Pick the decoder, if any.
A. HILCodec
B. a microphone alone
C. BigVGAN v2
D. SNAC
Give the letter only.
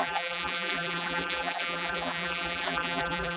C